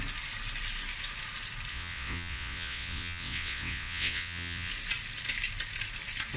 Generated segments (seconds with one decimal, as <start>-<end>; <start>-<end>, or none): 1.7-4.7